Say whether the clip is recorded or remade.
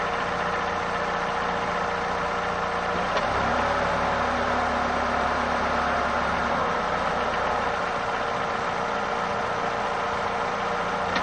recorded